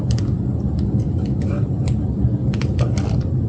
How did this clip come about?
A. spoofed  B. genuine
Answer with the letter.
A